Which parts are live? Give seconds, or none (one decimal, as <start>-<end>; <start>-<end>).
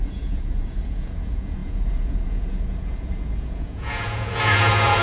none